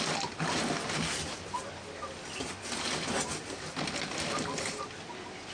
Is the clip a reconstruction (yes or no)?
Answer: no